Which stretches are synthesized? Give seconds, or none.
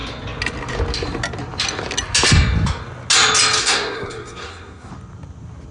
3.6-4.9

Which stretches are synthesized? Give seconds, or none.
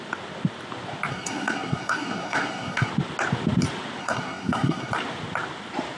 1.1-2.9; 4.0-4.9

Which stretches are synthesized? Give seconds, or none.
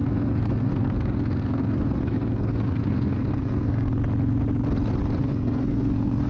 0.0-3.9; 5.2-6.3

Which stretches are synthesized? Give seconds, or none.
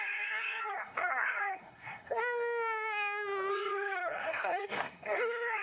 0.0-2.2; 3.5-5.6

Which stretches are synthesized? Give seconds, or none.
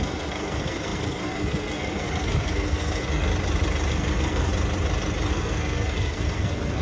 0.0-3.3; 3.9-4.5; 5.3-6.8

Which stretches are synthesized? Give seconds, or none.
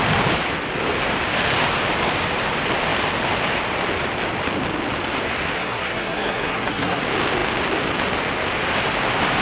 5.6-7.0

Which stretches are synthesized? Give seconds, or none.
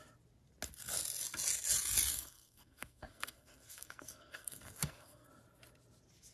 2.1-5.3